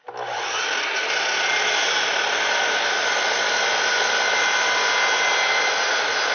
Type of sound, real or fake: real